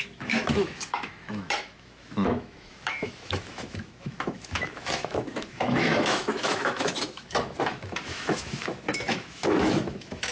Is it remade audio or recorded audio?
remade